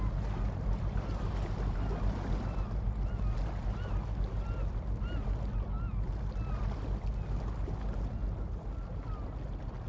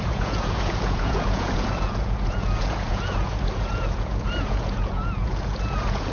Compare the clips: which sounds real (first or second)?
first